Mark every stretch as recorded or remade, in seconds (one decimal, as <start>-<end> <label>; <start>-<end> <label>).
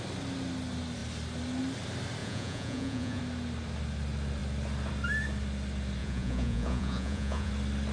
0.0-2.2 recorded; 2.2-3.2 remade; 3.2-6.0 recorded; 6.0-7.5 remade; 7.5-7.9 recorded